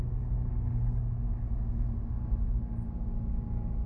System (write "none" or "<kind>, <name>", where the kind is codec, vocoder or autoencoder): none